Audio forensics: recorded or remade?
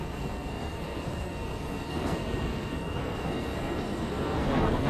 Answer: remade